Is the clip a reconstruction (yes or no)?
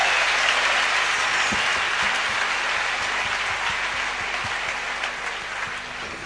no